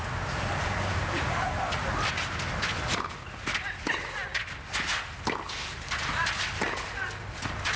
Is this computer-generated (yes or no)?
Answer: no